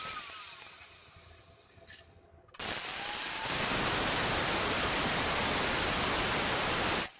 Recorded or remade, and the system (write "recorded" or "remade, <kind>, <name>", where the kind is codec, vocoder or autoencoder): recorded